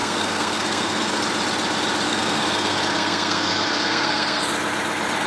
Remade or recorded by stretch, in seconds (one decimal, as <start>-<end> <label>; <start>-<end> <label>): 0.0-1.2 remade; 1.2-2.1 recorded; 2.1-4.4 remade; 4.4-5.3 recorded